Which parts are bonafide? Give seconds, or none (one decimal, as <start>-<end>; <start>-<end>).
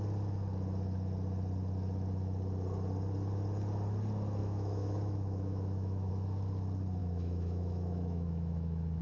0.0-4.4; 6.1-7.0